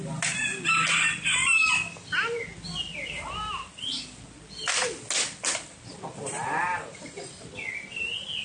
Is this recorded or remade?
recorded